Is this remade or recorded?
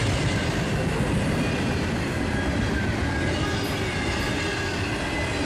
recorded